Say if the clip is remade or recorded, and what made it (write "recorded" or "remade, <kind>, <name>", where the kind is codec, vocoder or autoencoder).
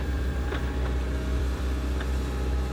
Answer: remade, vocoder, BigVGAN v2